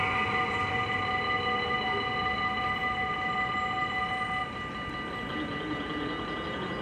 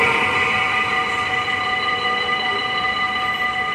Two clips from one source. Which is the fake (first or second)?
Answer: second